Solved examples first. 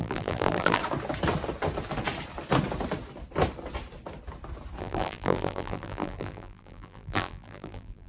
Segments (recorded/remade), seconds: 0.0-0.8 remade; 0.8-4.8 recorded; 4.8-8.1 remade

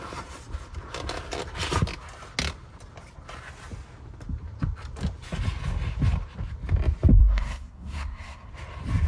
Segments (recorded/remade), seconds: 0.0-7.2 recorded; 7.2-8.5 remade; 8.5-9.1 recorded

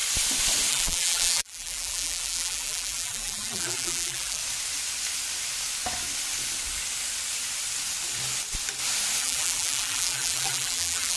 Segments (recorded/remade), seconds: 0.0-0.7 recorded; 0.7-4.4 remade; 4.4-9.2 recorded; 9.2-11.2 remade

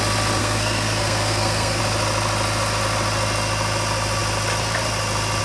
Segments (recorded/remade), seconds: 0.0-0.4 recorded; 0.4-1.8 remade; 1.8-5.4 recorded

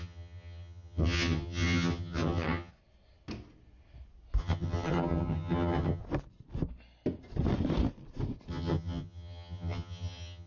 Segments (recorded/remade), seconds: 0.0-2.7 remade; 2.7-4.4 recorded; 4.4-6.0 remade; 6.0-8.5 recorded; 8.5-10.5 remade